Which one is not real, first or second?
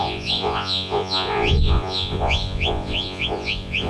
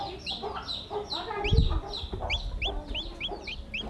first